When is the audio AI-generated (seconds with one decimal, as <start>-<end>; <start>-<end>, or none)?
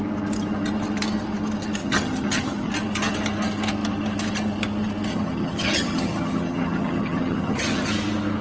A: 1.8-2.7; 5.1-7.9